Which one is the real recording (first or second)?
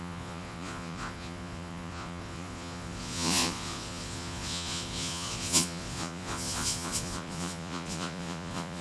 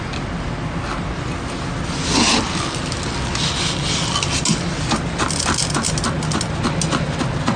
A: second